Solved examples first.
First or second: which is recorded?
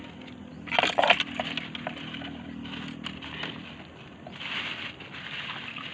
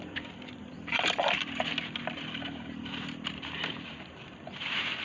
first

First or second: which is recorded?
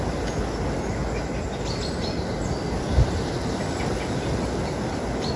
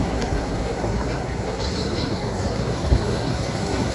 first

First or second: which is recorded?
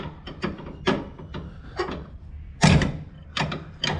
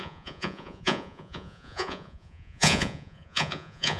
first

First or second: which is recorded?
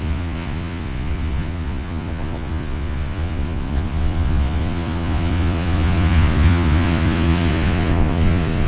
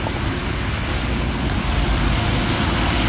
second